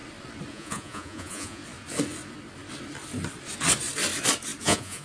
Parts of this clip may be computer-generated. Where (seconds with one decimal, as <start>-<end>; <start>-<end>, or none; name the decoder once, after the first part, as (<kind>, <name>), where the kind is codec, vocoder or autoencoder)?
0.5-1.6 (vocoder, Vocos); 4.6-5.0